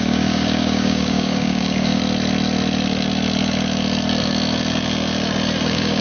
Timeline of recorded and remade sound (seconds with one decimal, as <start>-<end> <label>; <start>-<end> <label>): 0.0-2.0 remade; 2.0-5.6 recorded; 5.6-6.0 remade